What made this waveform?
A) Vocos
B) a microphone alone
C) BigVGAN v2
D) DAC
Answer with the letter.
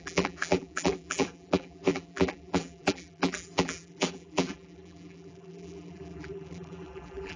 C